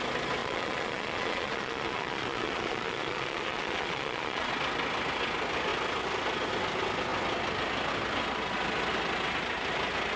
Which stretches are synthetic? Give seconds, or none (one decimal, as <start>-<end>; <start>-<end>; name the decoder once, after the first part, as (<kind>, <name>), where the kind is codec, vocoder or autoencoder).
0.4-4.5 (vocoder, Vocos)